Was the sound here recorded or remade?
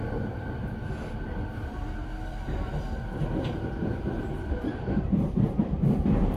remade